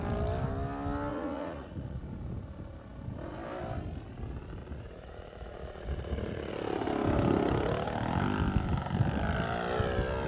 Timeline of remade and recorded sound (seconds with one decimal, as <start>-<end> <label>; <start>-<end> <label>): 0.0-1.1 recorded; 1.1-2.0 remade; 2.0-4.6 recorded; 4.6-6.5 remade; 6.5-10.3 recorded